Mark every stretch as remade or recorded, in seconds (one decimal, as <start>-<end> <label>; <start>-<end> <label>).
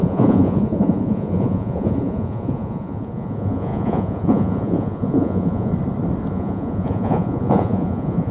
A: 0.0-5.7 remade; 5.7-6.3 recorded; 6.3-8.3 remade